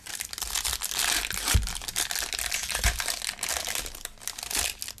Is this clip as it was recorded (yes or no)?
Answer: yes